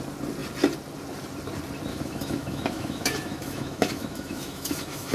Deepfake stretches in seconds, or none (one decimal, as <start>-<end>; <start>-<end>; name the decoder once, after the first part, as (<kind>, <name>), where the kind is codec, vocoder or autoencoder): 1.9-5.1 (autoencoder, DAC-VAE)